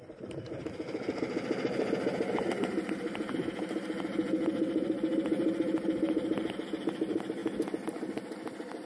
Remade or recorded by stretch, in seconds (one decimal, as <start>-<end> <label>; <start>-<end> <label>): 0.0-8.9 recorded